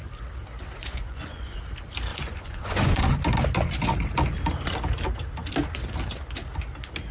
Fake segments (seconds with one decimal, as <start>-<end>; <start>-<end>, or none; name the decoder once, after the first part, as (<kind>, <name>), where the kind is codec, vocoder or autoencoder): 0.8-1.6 (vocoder, Vocos); 2.1-3.0